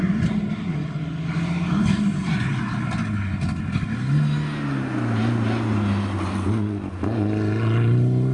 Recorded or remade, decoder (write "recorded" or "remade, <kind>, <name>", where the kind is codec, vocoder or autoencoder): recorded